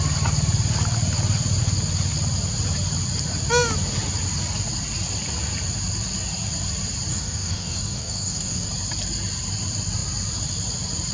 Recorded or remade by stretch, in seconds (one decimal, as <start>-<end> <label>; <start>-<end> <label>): 0.0-7.1 recorded; 7.1-8.7 remade; 8.7-11.1 recorded